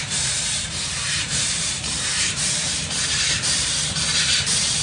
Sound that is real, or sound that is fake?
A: fake